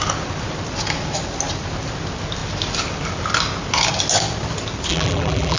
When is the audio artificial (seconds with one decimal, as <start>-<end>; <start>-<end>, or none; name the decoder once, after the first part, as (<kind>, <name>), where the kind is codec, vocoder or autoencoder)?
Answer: 4.9-5.6 (vocoder, BigVGAN v2)